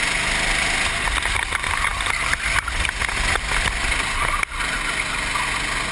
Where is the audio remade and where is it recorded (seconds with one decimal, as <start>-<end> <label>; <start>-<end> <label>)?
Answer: 0.0-5.9 recorded